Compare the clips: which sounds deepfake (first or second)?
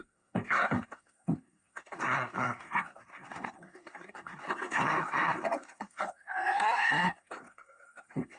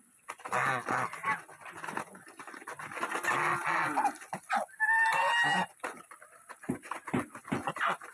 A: first